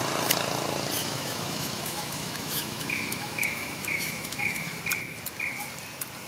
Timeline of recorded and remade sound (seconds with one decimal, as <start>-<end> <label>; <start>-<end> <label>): 0.0-1.0 recorded; 1.0-4.8 remade; 4.8-6.3 recorded